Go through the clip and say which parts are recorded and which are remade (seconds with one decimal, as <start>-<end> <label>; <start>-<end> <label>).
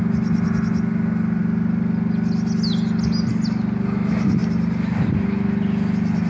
0.0-6.3 recorded